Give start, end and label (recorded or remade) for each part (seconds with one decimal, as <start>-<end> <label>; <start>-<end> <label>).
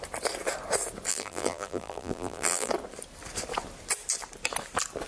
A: 0.0-1.1 recorded; 1.1-2.7 remade; 2.7-5.1 recorded